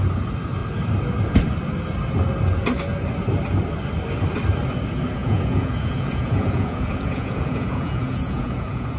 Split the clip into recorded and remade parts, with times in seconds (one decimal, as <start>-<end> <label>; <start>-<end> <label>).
0.0-5.2 recorded; 5.2-9.0 remade